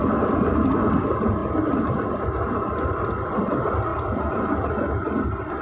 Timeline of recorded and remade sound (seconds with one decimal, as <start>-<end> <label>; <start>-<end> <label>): 0.0-5.6 recorded